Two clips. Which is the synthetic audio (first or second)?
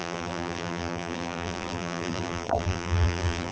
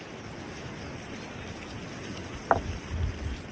first